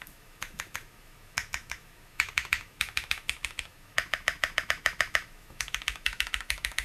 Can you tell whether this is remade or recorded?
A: remade